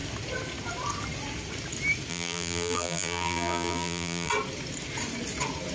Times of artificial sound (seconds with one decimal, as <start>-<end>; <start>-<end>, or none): 2.1-4.3